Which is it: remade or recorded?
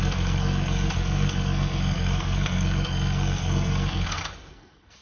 remade